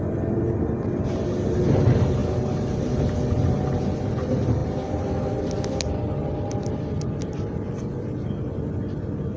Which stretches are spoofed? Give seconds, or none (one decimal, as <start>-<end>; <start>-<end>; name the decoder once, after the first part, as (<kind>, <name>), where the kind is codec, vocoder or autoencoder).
none